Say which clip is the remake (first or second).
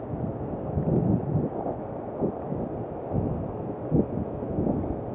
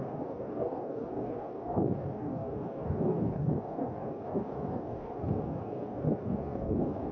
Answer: second